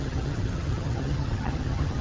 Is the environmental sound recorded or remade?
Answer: remade